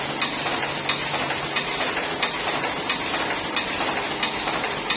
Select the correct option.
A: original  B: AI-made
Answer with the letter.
A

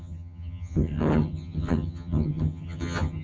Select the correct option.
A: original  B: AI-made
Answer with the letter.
B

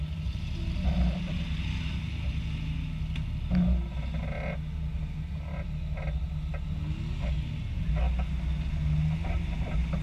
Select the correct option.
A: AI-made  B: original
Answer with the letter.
B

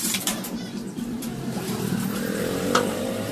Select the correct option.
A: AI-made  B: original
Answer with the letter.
A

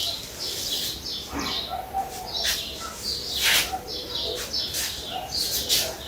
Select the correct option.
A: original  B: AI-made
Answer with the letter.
A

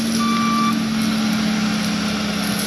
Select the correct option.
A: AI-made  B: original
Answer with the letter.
B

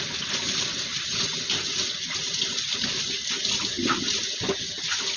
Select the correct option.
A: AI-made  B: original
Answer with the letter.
B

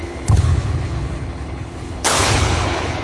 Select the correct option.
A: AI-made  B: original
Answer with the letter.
A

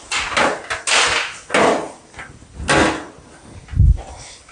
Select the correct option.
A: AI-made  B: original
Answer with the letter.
B